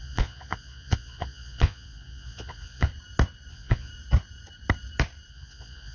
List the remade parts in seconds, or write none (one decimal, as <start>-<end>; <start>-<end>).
0.0-2.9; 3.5-3.9; 5.3-5.9